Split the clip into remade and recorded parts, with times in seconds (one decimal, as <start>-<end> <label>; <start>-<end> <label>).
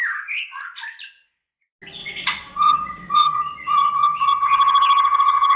0.0-2.0 recorded; 2.0-5.6 remade